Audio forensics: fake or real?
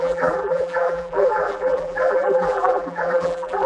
fake